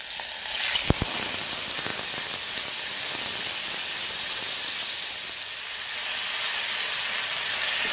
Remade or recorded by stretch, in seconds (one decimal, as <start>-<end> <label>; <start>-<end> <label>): 0.0-7.9 recorded